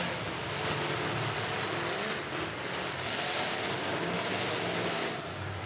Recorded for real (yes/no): yes